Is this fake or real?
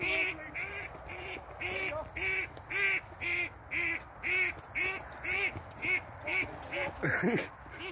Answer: real